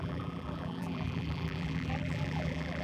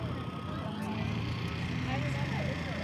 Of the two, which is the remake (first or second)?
first